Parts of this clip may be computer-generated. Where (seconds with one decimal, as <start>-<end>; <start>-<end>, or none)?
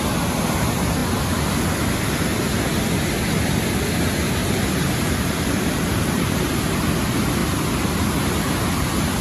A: 4.4-6.6